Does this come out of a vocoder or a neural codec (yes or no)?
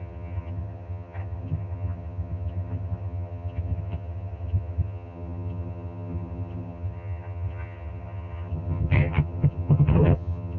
yes